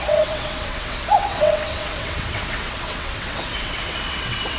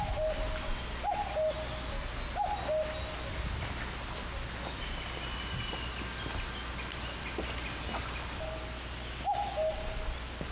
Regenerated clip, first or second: first